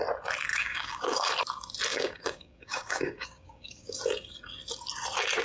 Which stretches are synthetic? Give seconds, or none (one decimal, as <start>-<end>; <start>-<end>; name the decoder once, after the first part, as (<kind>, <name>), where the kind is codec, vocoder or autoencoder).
0.5-1.3 (codec, DAC); 1.9-4.0